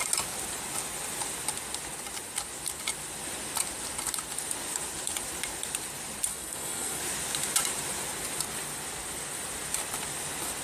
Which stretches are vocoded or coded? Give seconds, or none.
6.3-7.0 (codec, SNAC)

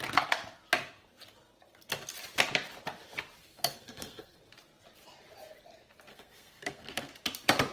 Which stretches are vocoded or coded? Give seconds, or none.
3.4-4.4 (codec, SNAC); 6.1-7.1

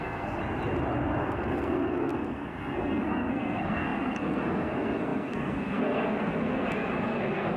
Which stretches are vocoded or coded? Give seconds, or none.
0.0-0.4 (codec, SNAC); 1.2-7.6

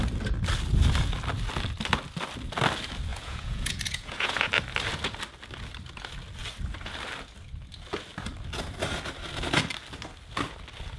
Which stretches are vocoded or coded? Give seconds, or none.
3.1-4.5 (vocoder, Vocos)

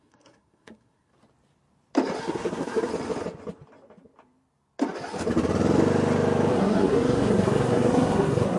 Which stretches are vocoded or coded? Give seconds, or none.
0.0-1.1 (codec, SNAC); 2.2-2.9; 6.5-8.6

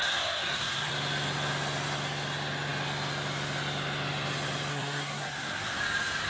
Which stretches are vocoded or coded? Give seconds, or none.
0.0-0.9 (codec, SNAC); 4.7-5.8